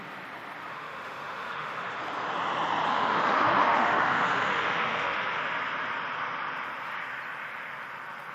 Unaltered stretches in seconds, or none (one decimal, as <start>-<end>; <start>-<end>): 0.0-0.7; 2.0-2.9; 5.4-8.3